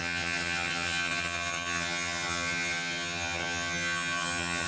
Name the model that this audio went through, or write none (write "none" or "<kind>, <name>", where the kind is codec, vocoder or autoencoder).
vocoder, HiFi-GAN